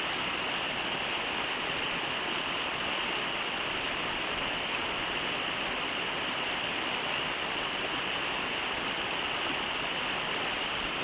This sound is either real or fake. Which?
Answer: real